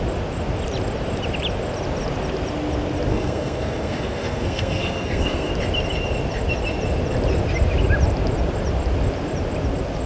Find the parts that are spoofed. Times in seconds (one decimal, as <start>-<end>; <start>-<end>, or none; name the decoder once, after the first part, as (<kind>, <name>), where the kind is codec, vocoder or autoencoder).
3.1-5.5 (codec, SNAC)